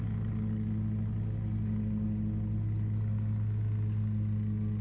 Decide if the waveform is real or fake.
real